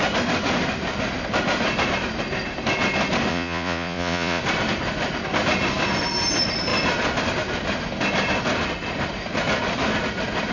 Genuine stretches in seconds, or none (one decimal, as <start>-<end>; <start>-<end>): 0.0-3.3; 4.4-10.5